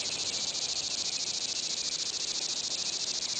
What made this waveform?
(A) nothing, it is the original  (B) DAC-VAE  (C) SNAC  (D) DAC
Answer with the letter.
A